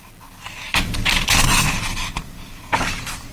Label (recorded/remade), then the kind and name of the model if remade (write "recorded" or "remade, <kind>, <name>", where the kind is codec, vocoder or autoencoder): recorded